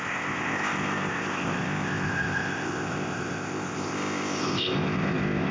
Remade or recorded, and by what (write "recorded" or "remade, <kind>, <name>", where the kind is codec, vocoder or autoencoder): remade, codec, ZipCodec